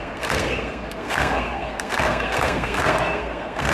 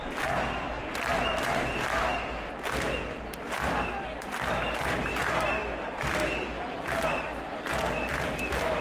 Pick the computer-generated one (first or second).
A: first